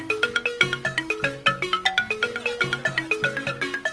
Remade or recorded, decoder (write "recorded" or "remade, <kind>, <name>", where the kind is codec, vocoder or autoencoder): recorded